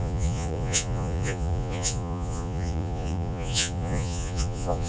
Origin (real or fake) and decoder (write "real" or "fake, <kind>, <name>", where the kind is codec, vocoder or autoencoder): fake, vocoder, Vocos